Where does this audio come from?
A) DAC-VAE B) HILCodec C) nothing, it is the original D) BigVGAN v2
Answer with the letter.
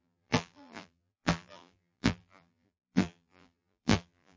D